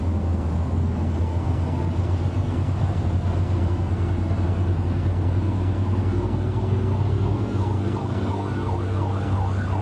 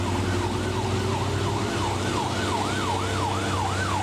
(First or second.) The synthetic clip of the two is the first